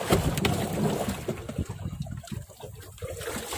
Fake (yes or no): no